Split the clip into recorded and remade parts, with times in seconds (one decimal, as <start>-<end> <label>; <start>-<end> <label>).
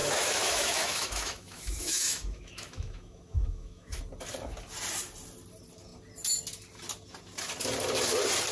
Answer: 0.0-4.0 remade; 4.0-8.5 recorded